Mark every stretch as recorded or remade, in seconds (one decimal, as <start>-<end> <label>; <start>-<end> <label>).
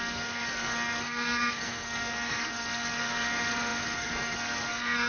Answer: 0.0-5.1 remade